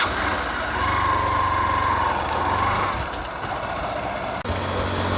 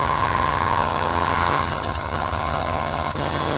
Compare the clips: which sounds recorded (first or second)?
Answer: first